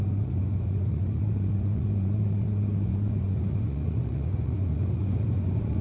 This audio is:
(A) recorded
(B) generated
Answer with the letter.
B